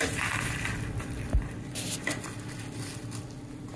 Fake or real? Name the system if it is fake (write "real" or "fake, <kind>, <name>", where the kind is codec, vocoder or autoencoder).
fake, vocoder, BigVGAN v2